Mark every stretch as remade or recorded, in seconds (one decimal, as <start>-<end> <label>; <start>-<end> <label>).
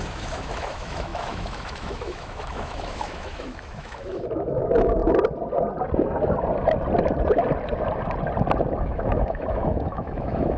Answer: 0.0-5.0 remade; 5.0-8.8 recorded; 8.8-10.6 remade